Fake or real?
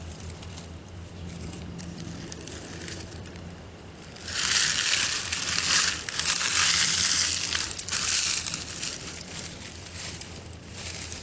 fake